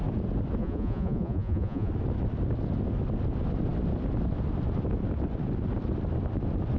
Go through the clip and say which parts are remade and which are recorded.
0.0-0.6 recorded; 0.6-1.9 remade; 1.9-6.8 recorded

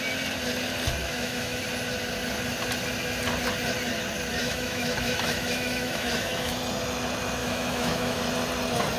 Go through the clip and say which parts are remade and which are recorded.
0.0-1.0 recorded; 1.0-1.6 remade; 1.6-4.4 recorded; 4.4-6.5 remade; 6.5-7.4 recorded; 7.4-8.2 remade; 8.2-9.0 recorded

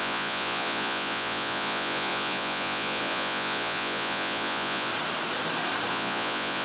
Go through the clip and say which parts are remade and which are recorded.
0.0-4.9 remade; 4.9-5.9 recorded; 5.9-6.6 remade

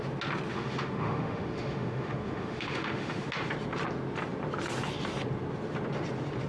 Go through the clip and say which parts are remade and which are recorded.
0.0-0.5 recorded; 0.5-3.3 remade; 3.3-6.5 recorded

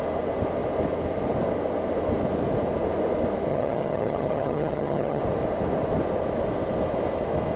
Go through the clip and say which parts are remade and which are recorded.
0.0-3.5 recorded; 3.5-5.2 remade; 5.2-7.6 recorded

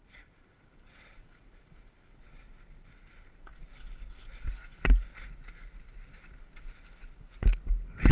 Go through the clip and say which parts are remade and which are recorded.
0.0-8.1 recorded

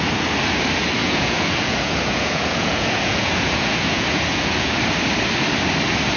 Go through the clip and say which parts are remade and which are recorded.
0.0-1.0 recorded; 1.0-4.7 remade; 4.7-6.2 recorded

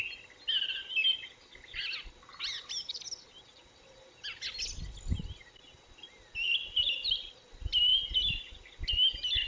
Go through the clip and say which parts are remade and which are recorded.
0.0-9.5 recorded